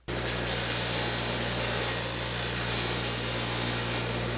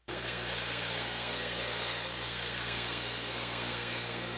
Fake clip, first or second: second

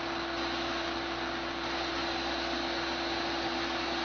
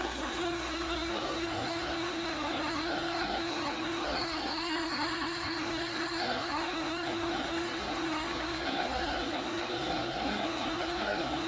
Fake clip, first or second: second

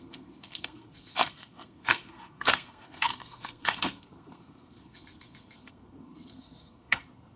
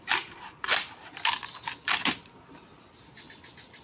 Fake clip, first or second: first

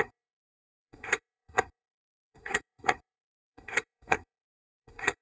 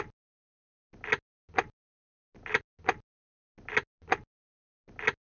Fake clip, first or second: first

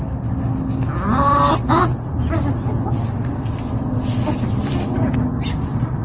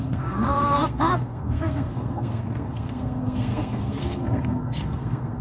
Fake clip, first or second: second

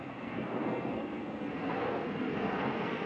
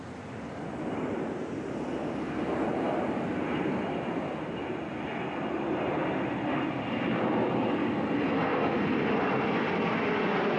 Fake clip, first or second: first